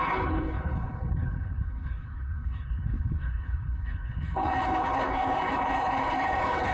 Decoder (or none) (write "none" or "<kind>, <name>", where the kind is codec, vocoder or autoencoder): codec, HILCodec